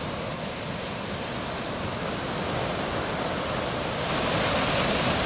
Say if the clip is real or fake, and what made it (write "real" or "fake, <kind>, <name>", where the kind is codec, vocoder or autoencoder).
real